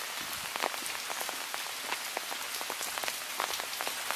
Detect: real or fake real